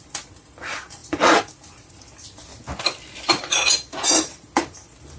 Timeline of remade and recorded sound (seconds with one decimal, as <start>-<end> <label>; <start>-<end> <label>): 0.0-2.5 remade; 2.5-4.1 recorded; 4.1-5.2 remade